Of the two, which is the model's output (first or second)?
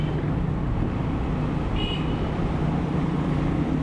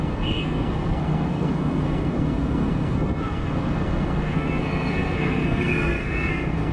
second